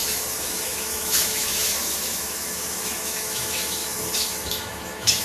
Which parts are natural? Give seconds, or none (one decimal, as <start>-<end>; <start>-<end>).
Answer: none